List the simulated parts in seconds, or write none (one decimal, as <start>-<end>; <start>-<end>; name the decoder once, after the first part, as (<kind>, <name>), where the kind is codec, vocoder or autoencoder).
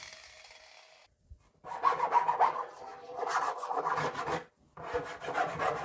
none